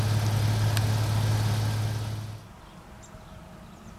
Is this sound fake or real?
real